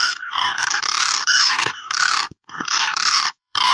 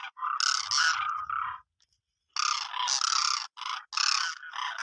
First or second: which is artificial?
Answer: first